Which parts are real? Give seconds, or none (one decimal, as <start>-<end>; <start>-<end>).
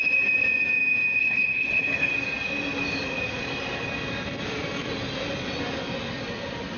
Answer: 0.0-1.2; 2.1-6.8